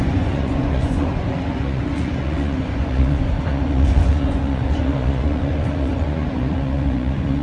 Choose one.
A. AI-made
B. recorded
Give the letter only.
A